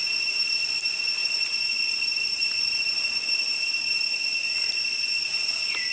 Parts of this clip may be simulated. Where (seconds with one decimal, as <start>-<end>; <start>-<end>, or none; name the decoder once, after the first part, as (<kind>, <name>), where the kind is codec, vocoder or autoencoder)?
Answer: 1.2-4.2 (vocoder, BigVGAN v2)